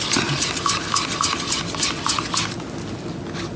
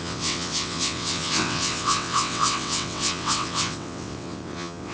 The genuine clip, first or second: first